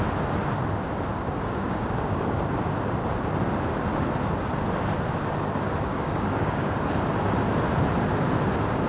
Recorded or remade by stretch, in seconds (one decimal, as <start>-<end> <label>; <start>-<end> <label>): 0.0-1.1 recorded; 1.1-2.3 remade; 2.3-5.9 recorded; 5.9-6.9 remade; 6.9-8.9 recorded